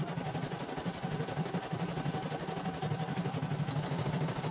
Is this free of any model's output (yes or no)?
yes